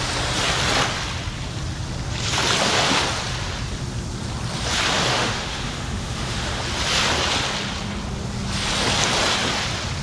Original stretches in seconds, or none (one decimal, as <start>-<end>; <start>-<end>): 0.0-5.1; 6.6-10.0